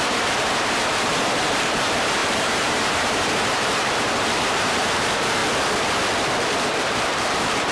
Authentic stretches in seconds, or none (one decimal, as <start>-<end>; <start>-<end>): 5.4-6.8